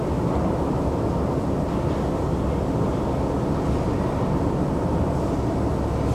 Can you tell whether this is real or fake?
real